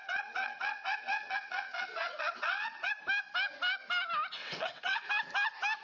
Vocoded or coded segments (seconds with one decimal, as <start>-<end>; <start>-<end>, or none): 0.0-2.9; 4.4-5.1